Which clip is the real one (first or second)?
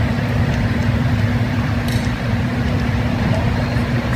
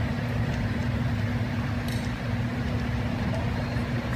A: second